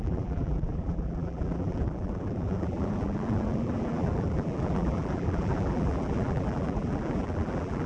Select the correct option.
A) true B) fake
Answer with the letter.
B